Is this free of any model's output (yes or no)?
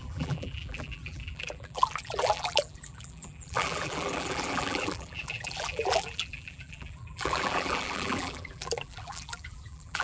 no